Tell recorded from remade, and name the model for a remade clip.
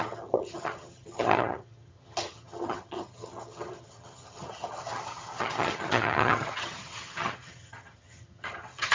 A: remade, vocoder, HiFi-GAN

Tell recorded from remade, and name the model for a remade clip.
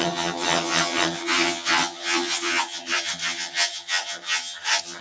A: remade, vocoder, HiFi-GAN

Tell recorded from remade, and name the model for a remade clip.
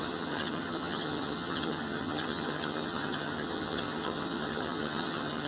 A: remade, vocoder, HiFi-GAN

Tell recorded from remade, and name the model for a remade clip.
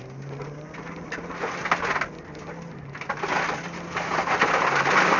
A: recorded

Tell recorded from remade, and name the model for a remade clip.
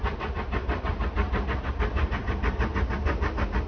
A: recorded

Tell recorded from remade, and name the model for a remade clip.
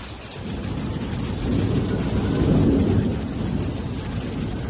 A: recorded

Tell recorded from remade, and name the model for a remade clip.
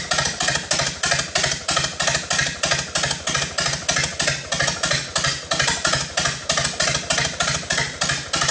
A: recorded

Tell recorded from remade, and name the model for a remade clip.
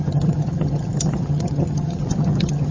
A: remade, vocoder, HiFi-GAN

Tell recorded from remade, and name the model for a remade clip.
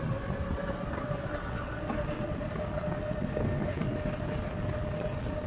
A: recorded